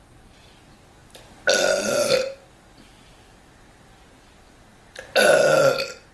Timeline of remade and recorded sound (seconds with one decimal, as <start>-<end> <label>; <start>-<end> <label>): 0.0-6.1 recorded